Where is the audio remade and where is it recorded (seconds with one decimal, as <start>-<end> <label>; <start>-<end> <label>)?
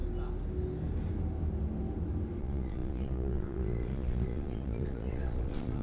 0.0-2.4 recorded; 2.4-5.8 remade